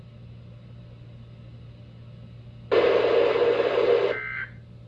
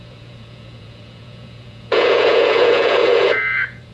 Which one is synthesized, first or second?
second